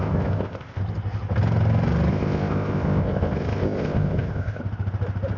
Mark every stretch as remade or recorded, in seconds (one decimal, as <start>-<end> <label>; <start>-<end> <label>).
0.0-0.8 remade; 0.8-2.1 recorded; 2.1-4.6 remade; 4.6-5.4 recorded